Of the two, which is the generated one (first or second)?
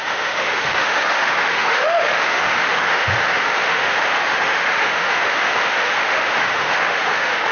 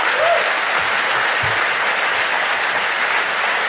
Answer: first